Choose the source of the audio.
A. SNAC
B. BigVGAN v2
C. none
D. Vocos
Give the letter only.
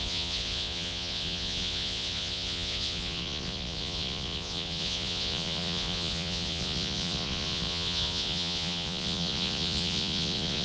D